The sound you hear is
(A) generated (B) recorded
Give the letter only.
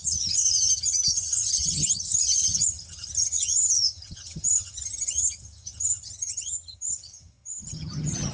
A